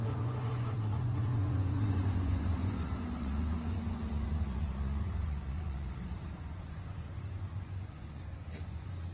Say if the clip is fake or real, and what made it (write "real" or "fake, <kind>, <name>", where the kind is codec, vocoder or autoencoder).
fake, vocoder, Vocos